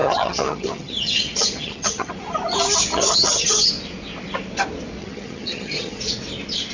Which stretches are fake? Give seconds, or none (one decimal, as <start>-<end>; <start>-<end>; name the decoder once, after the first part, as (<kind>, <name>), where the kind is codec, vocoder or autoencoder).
0.0-2.1 (vocoder, HiFi-GAN); 2.9-3.7; 5.0-6.0